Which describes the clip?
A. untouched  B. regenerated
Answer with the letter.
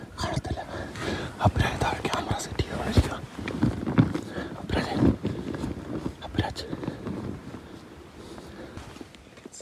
A